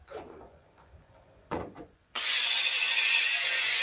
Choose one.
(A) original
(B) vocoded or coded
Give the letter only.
B